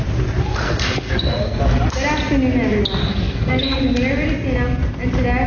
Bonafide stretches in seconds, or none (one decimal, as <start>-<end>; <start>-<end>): 0.0-0.5; 1.6-3.0; 3.8-5.5